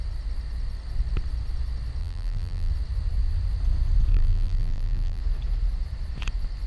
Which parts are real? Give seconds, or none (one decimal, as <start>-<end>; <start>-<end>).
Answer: 0.0-2.0; 2.7-4.1; 5.2-6.7